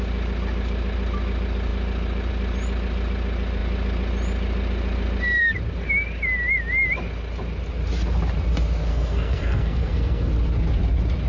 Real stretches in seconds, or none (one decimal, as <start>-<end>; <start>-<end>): 0.0-8.9; 10.3-11.3